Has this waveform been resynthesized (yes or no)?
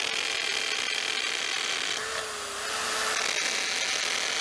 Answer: no